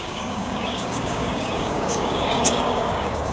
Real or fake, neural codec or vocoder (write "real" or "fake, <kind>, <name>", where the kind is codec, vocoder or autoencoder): fake, codec, DAC